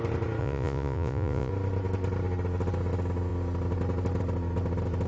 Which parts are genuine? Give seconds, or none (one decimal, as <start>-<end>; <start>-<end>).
0.0-0.4; 1.5-5.1